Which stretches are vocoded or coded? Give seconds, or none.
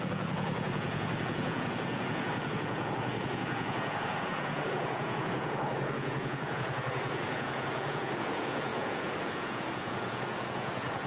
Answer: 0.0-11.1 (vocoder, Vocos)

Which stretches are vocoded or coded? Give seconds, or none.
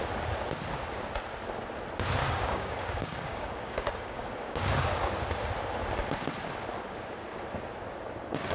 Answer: 2.2-5.1 (codec, DAC)